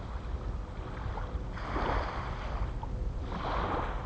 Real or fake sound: real